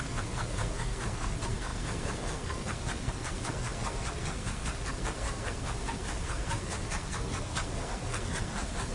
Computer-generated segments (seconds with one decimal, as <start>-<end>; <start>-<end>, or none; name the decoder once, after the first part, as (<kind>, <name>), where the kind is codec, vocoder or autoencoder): 0.0-8.9 (codec, SNAC)